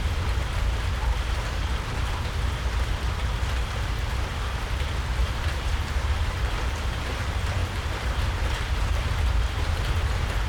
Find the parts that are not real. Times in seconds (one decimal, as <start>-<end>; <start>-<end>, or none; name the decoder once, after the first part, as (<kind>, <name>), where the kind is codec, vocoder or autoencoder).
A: 0.0-1.6 (vocoder, BigVGAN v2); 5.2-10.5